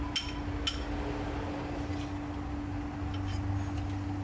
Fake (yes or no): no